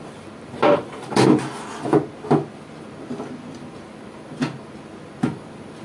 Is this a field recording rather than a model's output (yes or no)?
yes